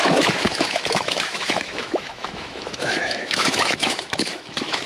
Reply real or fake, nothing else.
fake